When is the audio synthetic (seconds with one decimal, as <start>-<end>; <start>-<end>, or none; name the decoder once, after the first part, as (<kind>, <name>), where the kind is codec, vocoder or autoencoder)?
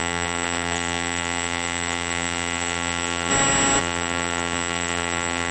0.0-3.3 (vocoder, BigVGAN v2); 3.8-5.5